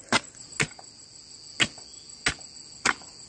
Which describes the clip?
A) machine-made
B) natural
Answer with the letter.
B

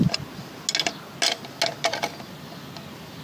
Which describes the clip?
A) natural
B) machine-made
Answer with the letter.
A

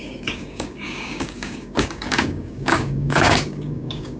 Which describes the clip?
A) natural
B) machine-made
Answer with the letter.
B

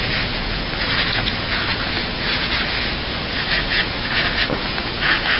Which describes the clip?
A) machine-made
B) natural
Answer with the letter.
A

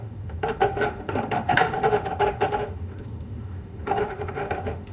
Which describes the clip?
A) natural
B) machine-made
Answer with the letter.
B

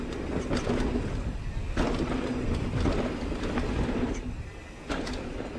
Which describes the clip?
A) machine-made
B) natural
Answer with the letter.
B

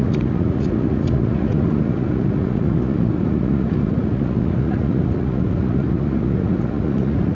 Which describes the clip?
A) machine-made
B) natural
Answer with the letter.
A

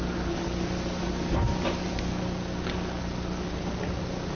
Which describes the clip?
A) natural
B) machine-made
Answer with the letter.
A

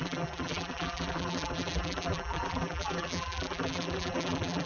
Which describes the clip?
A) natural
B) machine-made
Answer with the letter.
B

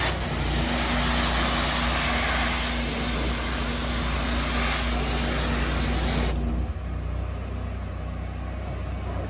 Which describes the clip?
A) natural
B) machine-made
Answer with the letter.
A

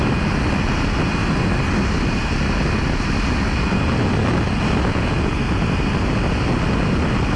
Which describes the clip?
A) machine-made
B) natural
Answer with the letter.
B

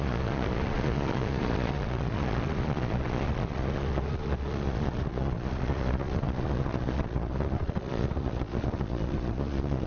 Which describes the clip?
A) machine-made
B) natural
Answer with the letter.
A